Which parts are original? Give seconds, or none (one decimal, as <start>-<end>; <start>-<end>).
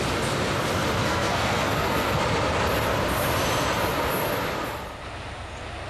0.0-1.0; 2.2-5.9